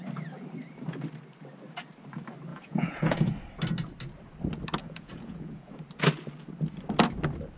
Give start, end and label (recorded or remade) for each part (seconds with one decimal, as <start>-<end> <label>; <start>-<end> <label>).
0.0-2.5 recorded; 2.5-3.3 remade; 3.3-4.8 recorded; 4.8-5.7 remade; 5.7-7.6 recorded